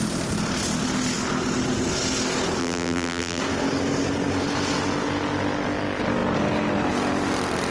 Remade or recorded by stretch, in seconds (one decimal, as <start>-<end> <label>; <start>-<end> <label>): 0.0-2.6 recorded; 2.6-3.4 remade; 3.4-7.7 recorded